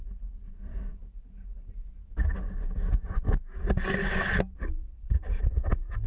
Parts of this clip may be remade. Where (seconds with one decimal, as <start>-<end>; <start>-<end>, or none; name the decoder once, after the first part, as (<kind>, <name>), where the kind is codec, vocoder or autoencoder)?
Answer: none